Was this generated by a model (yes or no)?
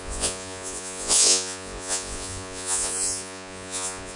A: yes